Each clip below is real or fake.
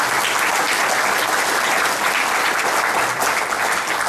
real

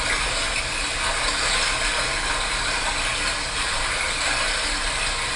real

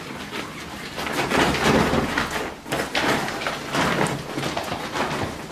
real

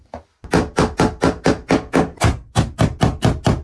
real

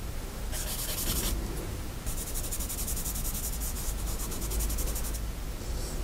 real